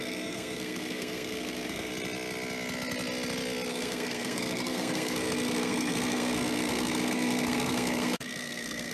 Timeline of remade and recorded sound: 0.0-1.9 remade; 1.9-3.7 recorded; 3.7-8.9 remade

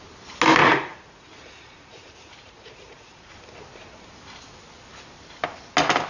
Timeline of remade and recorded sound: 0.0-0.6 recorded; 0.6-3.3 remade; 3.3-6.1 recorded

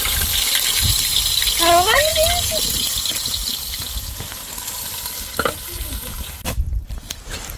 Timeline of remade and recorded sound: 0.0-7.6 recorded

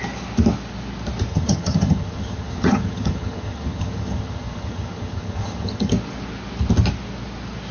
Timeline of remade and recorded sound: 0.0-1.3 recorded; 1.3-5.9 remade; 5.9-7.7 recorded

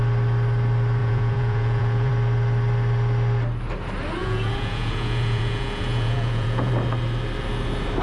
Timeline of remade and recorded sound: 0.0-1.0 recorded; 1.0-2.1 remade; 2.1-4.2 recorded; 4.2-6.7 remade; 6.7-8.0 recorded

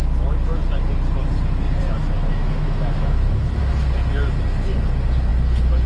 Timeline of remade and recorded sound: 0.0-2.3 recorded; 2.3-3.6 remade; 3.6-5.9 recorded

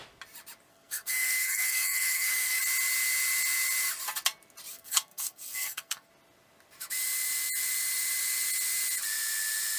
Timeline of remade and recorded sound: 0.0-0.7 recorded; 0.7-2.6 remade; 2.6-4.7 recorded; 4.7-6.1 remade; 6.1-9.8 recorded

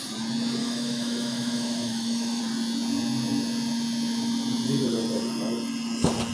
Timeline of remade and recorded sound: 0.0-0.6 recorded; 0.6-2.4 remade; 2.4-6.3 recorded